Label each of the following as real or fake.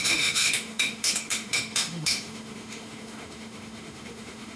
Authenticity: fake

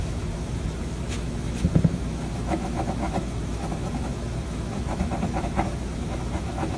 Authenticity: fake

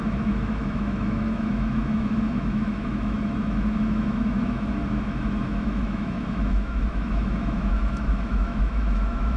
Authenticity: fake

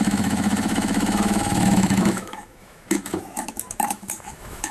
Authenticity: fake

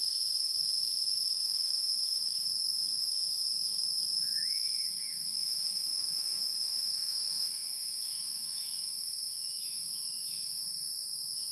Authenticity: fake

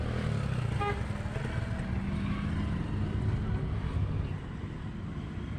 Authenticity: real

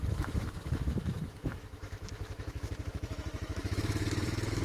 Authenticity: fake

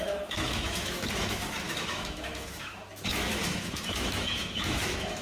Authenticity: fake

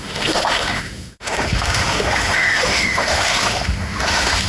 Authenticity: fake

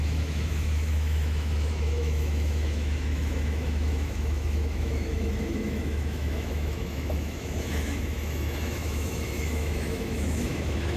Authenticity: fake